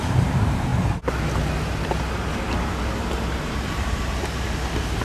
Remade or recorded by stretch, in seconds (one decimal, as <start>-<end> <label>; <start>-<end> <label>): 0.0-0.7 remade; 0.7-3.4 recorded; 3.4-5.0 remade